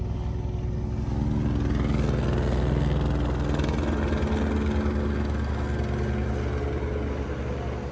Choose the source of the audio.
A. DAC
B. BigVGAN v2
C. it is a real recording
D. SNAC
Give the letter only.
C